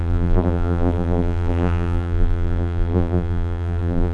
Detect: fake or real fake